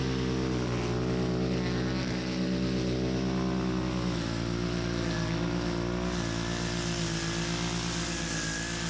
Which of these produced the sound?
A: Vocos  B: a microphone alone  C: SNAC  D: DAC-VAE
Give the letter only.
B